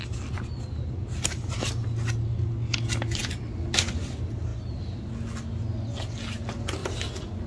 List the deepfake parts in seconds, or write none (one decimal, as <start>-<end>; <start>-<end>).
6.8-7.5

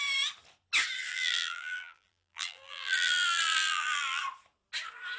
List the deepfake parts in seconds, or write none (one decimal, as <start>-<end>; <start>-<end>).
1.1-4.2

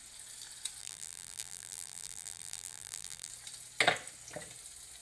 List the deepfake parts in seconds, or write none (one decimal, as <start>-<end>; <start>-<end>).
0.8-3.3

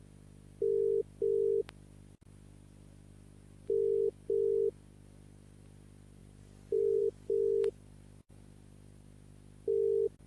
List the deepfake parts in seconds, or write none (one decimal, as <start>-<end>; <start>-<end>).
6.2-7.0

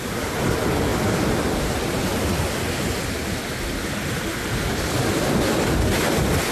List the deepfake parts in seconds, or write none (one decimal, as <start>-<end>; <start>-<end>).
none

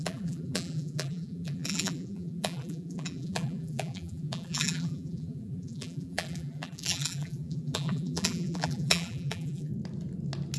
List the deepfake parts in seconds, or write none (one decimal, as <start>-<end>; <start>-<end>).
0.0-9.7

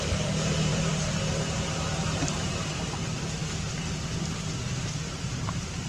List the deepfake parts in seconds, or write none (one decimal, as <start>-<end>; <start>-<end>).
0.0-3.4; 5.2-5.9